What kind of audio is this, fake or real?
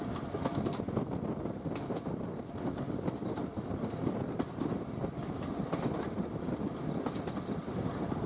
real